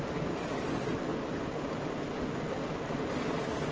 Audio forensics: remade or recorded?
recorded